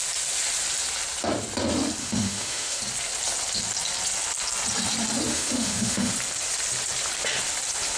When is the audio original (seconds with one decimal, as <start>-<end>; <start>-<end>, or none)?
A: 0.0-2.0; 2.8-5.3; 6.1-8.0